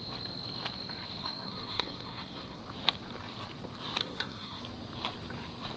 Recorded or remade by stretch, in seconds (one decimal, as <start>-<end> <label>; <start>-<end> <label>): 0.0-1.2 recorded; 1.2-2.6 remade; 2.6-4.0 recorded; 4.0-4.6 remade; 4.6-5.8 recorded